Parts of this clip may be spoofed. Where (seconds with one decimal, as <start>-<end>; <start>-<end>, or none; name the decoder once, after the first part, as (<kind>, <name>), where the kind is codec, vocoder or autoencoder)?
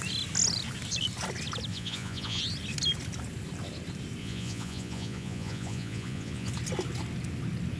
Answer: 1.7-2.4 (vocoder, Vocos); 4.2-6.5